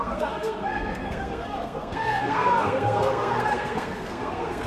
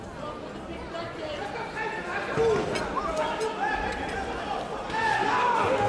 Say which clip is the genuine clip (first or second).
second